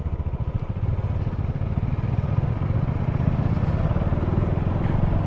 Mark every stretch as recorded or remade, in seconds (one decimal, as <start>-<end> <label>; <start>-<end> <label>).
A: 0.0-0.9 remade; 0.9-5.3 recorded